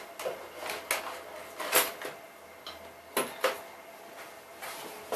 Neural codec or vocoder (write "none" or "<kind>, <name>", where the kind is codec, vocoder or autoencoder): none